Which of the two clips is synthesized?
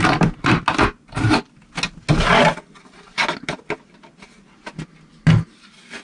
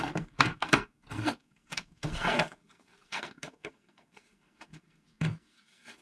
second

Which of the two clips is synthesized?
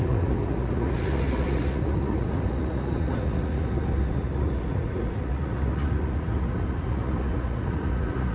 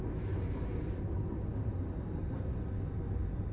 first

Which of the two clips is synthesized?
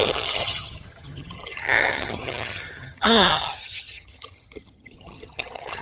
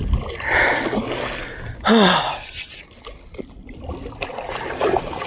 first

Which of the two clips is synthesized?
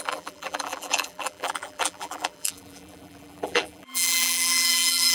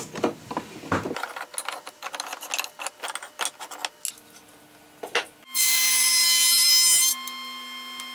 first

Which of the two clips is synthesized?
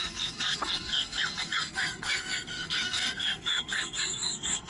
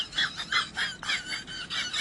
first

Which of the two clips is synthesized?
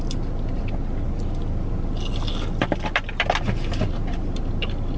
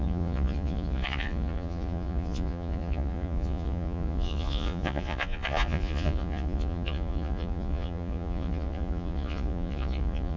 second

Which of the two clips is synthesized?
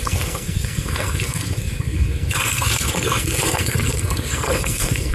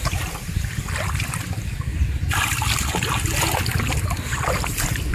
first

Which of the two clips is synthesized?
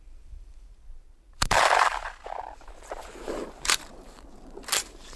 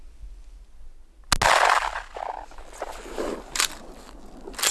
first